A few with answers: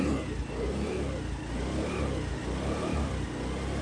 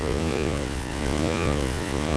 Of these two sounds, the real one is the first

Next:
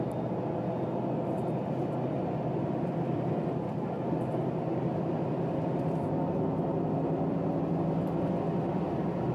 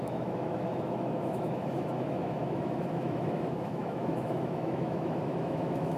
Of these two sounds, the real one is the first